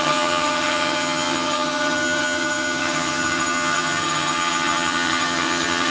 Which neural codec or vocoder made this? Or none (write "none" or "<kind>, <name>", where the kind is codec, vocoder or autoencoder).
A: vocoder, HiFi-GAN